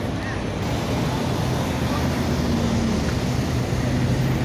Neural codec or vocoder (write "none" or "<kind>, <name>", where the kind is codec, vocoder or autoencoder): none